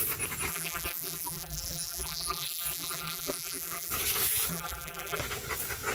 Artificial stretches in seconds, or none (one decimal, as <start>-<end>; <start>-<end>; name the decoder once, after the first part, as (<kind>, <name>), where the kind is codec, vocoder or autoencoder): 0.5-3.9 (vocoder, BigVGAN v2); 4.5-5.2